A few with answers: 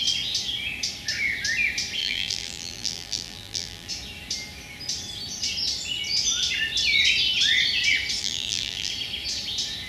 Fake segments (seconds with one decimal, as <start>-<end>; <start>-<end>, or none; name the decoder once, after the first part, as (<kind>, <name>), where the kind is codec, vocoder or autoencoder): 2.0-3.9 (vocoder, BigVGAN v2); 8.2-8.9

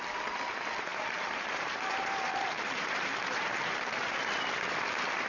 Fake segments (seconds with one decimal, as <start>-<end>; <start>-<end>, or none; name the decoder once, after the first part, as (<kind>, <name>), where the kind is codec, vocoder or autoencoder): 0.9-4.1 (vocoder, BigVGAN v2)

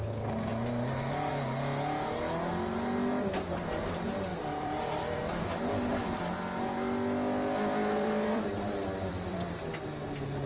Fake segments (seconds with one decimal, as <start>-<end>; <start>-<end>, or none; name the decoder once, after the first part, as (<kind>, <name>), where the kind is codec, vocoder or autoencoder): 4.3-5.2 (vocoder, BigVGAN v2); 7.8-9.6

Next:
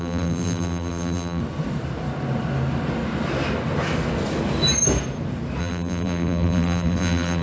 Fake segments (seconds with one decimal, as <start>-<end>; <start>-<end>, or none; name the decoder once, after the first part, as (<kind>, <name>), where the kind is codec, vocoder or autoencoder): 0.0-1.4 (vocoder, BigVGAN v2); 5.6-7.4

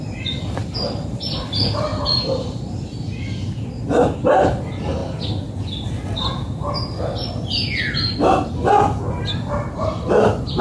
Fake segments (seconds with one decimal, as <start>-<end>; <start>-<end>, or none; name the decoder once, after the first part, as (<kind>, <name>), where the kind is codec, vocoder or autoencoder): 0.0-5.0 (vocoder, BigVGAN v2); 9.1-10.6

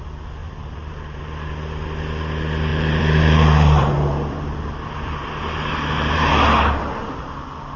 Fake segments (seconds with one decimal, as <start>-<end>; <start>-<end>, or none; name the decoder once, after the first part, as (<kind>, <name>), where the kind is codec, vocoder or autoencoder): 0.4-1.2 (vocoder, BigVGAN v2); 2.7-6.3